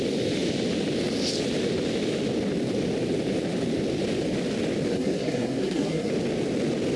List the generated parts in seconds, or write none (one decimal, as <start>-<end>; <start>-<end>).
4.9-6.1